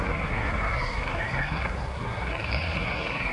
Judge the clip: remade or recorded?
remade